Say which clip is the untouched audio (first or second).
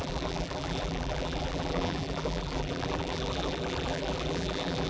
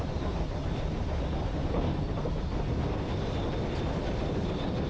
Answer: second